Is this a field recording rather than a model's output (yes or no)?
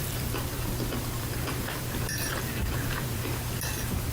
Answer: no